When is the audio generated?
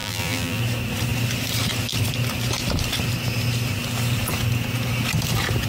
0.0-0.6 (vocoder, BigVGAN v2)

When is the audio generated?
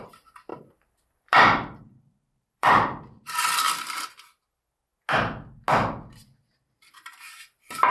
0.5-4.1 (vocoder, BigVGAN v2)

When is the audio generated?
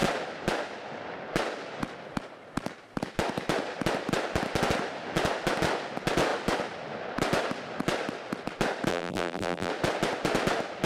8.9-9.7 (vocoder, BigVGAN v2)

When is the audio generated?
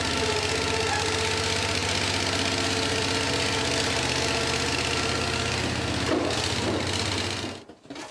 none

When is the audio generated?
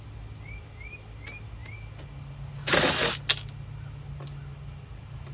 none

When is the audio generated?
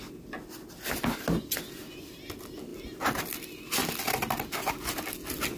none